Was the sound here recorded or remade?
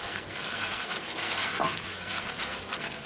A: remade